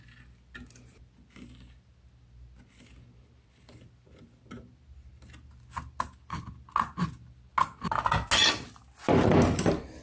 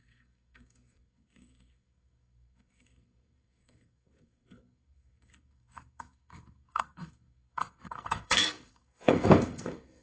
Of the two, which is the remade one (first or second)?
second